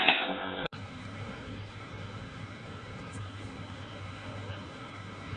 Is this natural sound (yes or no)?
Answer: no